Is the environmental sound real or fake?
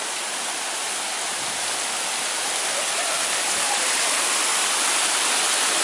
real